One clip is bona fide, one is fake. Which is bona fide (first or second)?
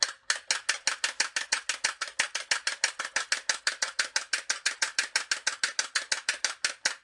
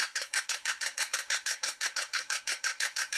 first